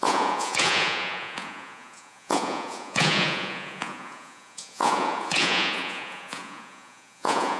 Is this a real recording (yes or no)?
no